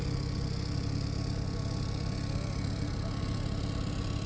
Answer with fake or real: real